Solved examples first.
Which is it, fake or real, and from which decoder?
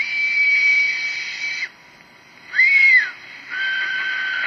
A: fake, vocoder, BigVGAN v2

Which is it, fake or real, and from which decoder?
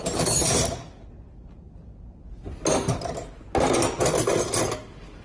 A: real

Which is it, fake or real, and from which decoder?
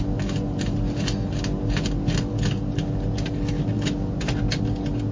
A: real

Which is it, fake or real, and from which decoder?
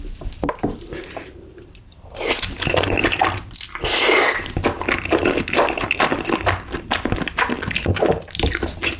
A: real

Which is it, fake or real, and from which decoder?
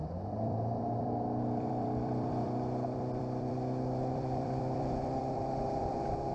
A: fake, vocoder, BigVGAN v2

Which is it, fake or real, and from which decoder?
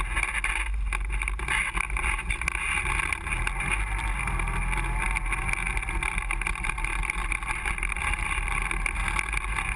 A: real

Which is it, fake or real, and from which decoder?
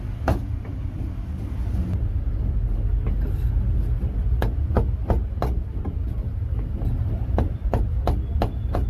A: real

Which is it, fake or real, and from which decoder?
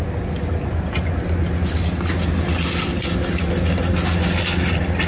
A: real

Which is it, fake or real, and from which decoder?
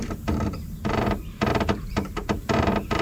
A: fake, vocoder, BigVGAN v2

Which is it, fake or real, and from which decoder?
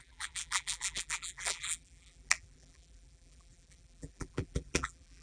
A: fake, vocoder, BigVGAN v2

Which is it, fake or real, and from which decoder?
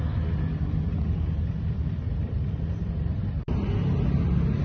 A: real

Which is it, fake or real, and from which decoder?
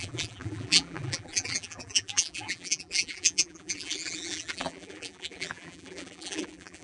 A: fake, vocoder, BigVGAN v2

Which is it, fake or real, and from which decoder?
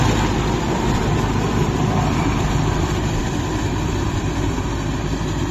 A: fake, vocoder, BigVGAN v2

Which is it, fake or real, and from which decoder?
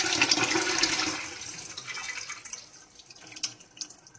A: real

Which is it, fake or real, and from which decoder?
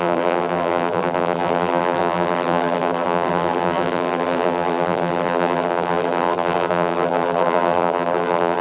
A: fake, vocoder, BigVGAN v2